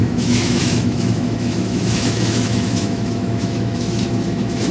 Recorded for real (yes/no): no